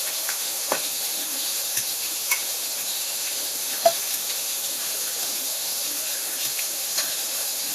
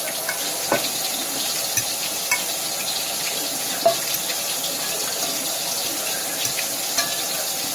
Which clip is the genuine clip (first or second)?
second